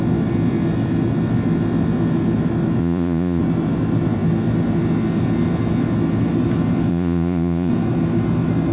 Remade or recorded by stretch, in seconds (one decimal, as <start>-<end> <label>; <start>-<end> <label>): 0.0-2.8 recorded; 2.8-3.4 remade; 3.4-6.9 recorded; 6.9-7.7 remade; 7.7-8.7 recorded